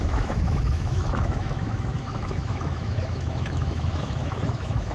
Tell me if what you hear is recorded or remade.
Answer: remade